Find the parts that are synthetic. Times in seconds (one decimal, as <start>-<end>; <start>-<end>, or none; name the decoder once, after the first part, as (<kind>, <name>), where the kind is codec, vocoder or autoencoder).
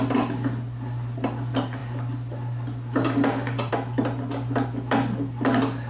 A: none